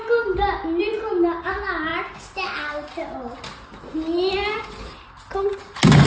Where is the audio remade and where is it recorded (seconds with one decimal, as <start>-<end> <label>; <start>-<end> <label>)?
0.0-6.1 recorded